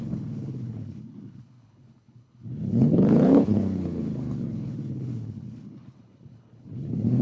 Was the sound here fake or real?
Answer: fake